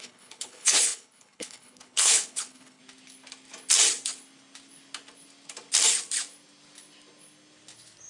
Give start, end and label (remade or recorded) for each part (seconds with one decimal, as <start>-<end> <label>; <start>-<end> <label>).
0.0-2.8 remade; 2.8-8.1 recorded